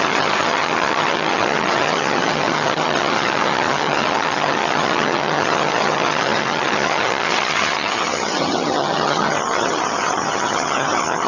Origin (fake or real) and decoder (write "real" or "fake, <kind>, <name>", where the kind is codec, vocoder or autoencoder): fake, vocoder, HiFi-GAN